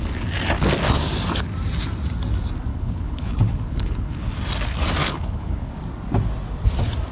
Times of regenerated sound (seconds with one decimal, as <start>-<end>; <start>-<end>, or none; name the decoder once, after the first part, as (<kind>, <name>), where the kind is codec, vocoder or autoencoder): 2.7-4.4 (codec, HILCodec); 5.0-5.7